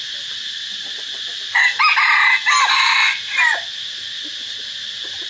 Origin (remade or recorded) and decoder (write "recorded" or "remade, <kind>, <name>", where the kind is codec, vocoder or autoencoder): recorded